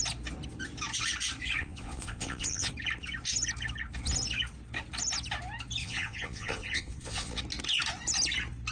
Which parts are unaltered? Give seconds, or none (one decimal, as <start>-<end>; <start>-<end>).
0.0-1.6; 2.7-5.8; 7.4-8.7